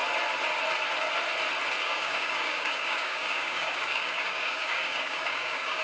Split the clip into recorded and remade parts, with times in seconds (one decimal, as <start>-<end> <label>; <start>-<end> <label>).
0.0-1.8 recorded; 1.8-5.8 remade